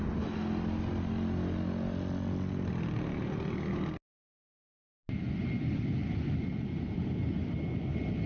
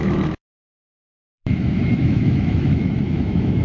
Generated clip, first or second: second